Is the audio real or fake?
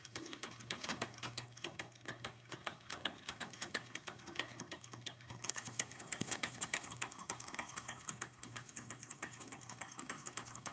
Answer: fake